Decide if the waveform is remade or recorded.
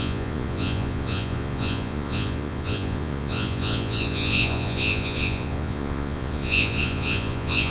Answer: remade